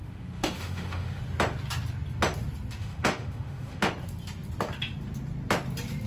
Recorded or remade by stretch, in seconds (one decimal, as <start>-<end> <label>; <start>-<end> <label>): 0.0-1.2 remade; 1.2-2.8 recorded; 2.8-3.9 remade; 3.9-6.1 recorded